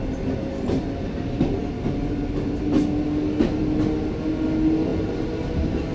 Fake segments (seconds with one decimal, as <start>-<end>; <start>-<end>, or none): none